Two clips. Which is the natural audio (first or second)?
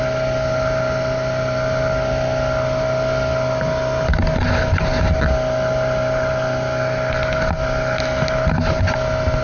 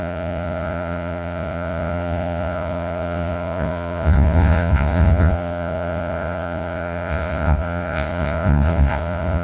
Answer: first